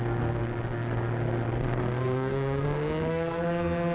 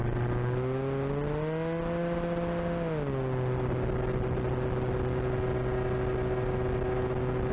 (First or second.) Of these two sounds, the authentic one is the second